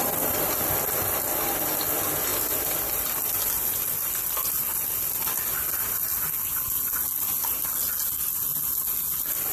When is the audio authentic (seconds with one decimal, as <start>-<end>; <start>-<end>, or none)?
0.0-9.5